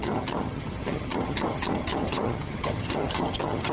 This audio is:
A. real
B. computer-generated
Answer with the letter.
B